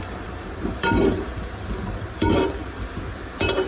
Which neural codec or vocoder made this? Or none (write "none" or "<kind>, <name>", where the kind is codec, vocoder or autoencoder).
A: vocoder, BigVGAN v2